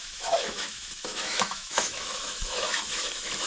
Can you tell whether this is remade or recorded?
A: remade